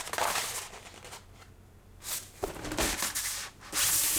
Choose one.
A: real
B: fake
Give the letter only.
A